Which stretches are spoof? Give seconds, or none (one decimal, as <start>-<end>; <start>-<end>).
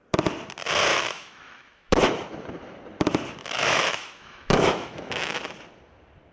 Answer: 0.9-2.0; 3.4-5.4